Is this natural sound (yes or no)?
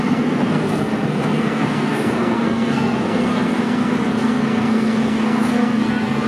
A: no